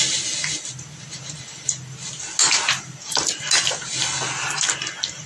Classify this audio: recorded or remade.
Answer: recorded